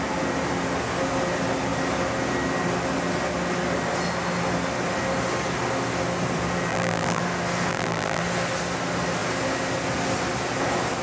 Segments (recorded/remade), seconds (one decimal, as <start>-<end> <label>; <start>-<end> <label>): 0.0-6.7 recorded; 6.7-7.2 remade; 7.2-7.7 recorded; 7.7-8.2 remade; 8.2-11.0 recorded